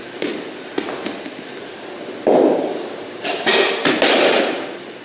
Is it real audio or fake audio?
real